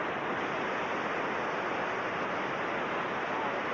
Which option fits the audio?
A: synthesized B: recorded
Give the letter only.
B